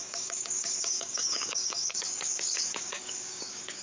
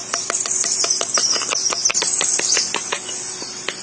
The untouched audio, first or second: second